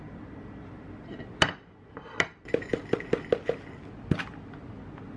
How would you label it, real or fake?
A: real